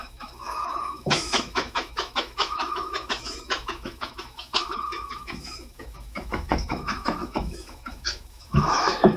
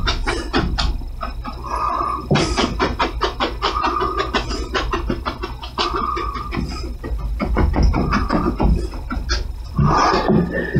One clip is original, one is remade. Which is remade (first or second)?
first